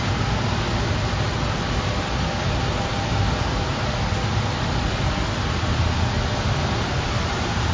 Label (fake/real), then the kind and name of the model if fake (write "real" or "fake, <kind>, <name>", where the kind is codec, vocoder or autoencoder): real